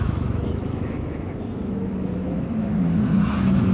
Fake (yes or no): yes